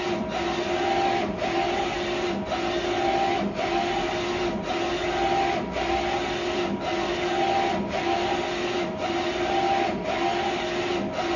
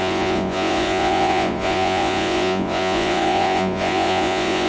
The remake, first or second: second